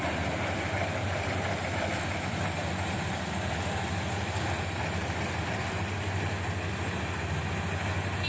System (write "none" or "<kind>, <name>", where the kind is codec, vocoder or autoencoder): none